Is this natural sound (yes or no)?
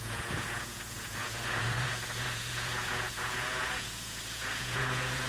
no